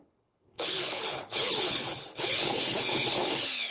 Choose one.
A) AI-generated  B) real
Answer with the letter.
A